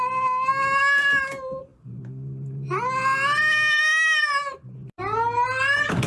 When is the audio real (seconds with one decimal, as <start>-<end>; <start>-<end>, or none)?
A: 0.0-6.1